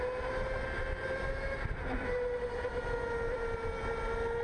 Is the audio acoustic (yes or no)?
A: yes